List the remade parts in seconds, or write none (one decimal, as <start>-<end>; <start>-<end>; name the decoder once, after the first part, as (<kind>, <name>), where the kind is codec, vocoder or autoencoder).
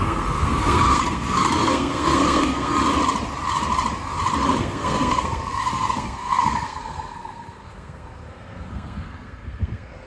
0.0-2.8 (codec, SNAC); 4.6-10.1